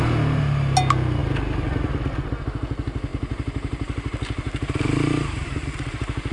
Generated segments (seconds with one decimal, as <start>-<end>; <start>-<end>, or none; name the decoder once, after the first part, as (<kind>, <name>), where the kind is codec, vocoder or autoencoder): 3.1-6.3 (vocoder, BigVGAN v2)